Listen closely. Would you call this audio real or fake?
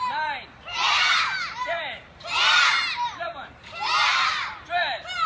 fake